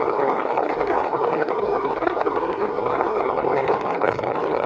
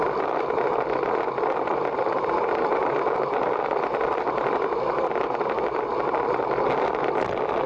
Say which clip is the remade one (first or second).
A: first